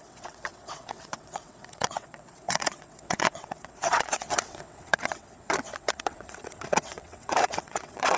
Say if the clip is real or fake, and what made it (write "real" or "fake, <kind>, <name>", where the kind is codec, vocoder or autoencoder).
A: fake, vocoder, WaveNeXt